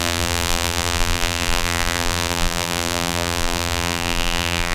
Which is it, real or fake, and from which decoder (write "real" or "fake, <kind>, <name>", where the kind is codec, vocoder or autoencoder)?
fake, vocoder, BigVGAN v2